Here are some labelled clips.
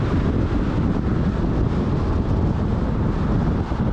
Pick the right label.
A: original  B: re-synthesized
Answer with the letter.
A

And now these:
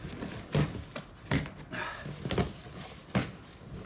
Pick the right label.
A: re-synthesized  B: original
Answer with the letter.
B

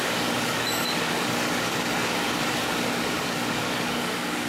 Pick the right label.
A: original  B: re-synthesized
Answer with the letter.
B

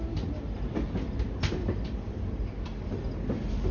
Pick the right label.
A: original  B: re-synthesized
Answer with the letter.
A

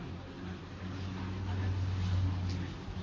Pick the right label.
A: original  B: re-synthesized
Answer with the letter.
A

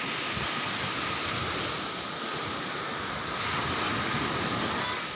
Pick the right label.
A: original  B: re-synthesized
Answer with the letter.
A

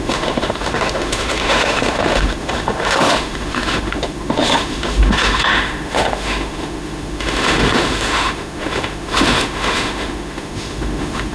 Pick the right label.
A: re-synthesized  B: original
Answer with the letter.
A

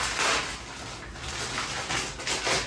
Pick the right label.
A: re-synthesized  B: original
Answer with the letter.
B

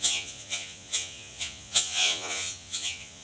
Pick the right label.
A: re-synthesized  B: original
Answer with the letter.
A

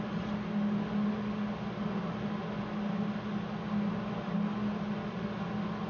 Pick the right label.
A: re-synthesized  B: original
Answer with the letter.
B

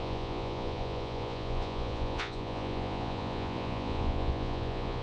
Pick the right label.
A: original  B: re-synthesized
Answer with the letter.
B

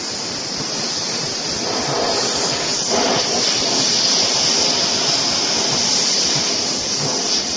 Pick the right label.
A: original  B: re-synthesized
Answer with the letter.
A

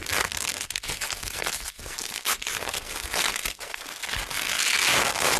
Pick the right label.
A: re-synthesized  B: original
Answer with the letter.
A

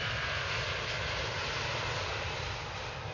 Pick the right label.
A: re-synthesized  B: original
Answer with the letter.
B